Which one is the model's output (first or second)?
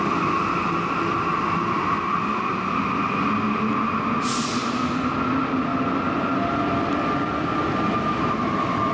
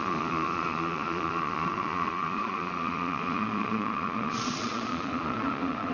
second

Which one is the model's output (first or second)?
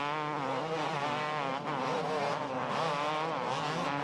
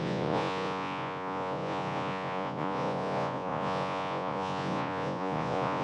second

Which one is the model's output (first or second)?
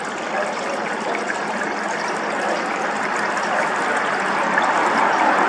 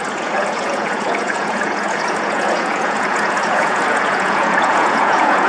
second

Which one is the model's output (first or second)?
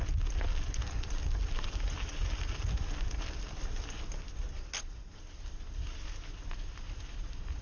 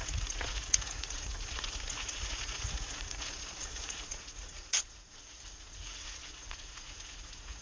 second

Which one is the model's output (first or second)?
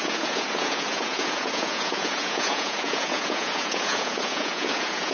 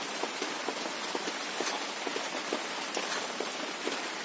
first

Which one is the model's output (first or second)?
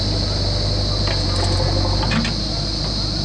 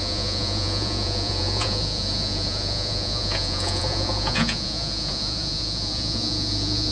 second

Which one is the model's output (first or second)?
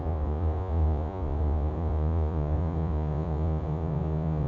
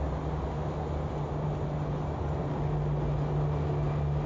first